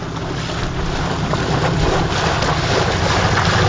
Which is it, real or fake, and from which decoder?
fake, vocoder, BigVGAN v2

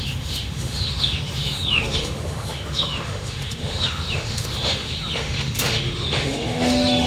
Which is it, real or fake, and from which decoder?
fake, autoencoder, DAC-VAE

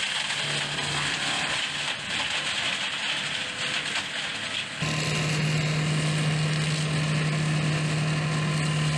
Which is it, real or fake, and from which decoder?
real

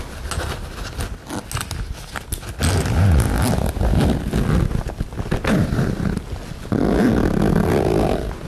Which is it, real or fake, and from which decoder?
real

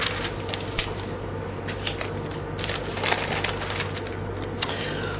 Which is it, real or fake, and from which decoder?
real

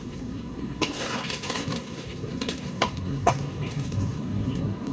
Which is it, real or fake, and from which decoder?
fake, codec, SNAC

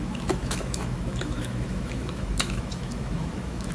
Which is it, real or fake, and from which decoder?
fake, autoencoder, DAC-VAE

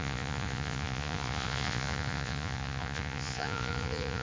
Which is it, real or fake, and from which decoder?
fake, vocoder, Vocos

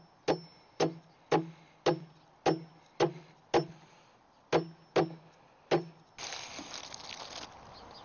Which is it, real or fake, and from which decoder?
real